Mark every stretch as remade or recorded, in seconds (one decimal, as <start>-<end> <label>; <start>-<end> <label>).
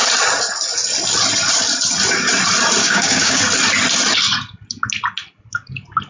0.0-2.8 recorded; 2.8-3.4 remade; 3.4-6.1 recorded